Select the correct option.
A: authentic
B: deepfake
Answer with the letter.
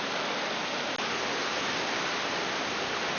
A